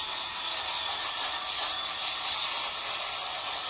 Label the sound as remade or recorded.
recorded